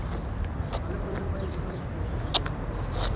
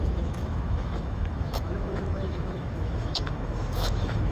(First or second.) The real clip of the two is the first